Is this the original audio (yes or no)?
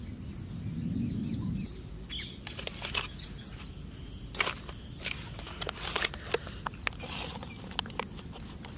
yes